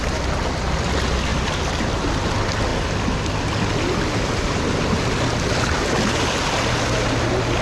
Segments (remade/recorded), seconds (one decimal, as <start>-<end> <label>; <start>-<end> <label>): 0.0-7.6 recorded